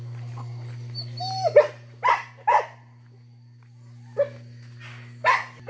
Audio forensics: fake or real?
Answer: real